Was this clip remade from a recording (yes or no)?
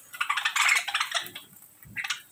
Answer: no